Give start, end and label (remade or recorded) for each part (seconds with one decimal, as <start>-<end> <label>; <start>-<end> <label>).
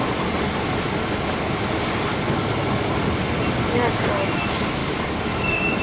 0.0-2.1 recorded; 2.1-2.9 remade; 2.9-4.8 recorded; 4.8-5.8 remade